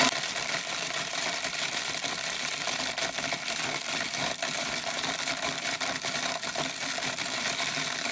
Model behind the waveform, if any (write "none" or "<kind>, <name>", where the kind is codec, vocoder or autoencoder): vocoder, BigVGAN v2